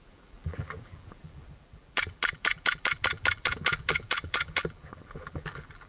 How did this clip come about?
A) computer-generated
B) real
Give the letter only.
A